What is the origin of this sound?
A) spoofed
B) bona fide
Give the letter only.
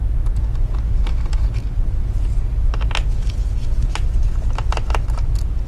B